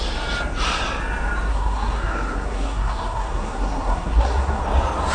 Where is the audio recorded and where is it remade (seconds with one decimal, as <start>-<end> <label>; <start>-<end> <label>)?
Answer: 0.0-1.5 recorded; 1.5-4.6 remade; 4.6-5.1 recorded